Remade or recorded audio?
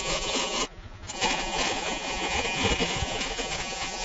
remade